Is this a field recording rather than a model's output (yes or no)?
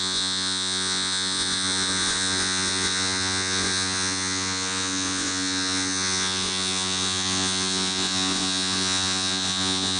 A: no